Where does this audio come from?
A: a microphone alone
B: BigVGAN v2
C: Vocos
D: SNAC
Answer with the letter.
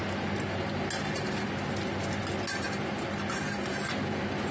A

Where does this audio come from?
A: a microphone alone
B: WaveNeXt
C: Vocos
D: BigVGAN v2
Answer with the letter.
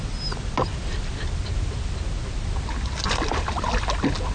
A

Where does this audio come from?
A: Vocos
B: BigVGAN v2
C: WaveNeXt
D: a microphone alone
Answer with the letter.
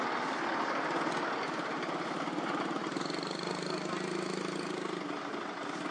D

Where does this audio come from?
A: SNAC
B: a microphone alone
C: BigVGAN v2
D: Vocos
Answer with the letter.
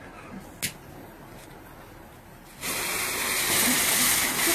B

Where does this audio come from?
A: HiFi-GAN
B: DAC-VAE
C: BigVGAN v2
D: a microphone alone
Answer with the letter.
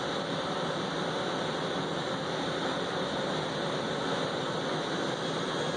D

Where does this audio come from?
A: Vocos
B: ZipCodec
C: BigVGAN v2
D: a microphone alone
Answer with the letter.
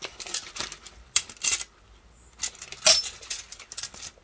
D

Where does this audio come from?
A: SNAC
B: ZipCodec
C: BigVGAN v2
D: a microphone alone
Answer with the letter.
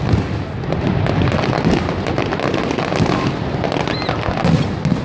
D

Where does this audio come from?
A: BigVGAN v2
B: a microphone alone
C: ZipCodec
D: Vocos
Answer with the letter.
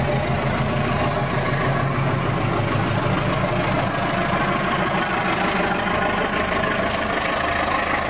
B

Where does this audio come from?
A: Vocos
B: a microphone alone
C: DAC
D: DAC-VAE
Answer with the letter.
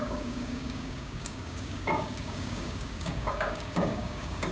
C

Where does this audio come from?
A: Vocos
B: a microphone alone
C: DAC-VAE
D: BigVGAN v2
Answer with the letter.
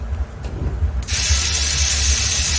B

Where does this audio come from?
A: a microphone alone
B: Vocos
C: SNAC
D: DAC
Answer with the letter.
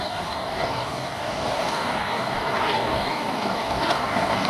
D